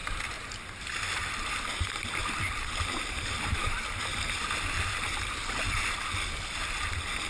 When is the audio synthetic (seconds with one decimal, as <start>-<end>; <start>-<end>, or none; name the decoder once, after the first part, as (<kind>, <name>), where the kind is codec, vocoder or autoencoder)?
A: none